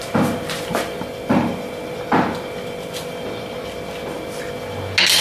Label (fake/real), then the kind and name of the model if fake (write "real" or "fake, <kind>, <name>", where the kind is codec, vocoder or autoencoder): real